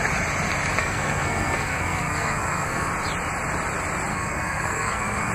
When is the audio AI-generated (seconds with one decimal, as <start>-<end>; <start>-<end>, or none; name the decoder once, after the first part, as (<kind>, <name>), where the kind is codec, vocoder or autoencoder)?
0.8-2.9 (codec, SNAC); 4.1-5.3